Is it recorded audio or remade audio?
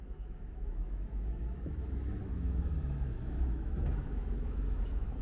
remade